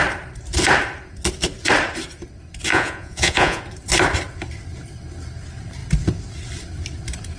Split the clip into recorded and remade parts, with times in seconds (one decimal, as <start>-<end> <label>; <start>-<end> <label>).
0.0-2.7 recorded; 2.7-3.6 remade; 3.6-7.4 recorded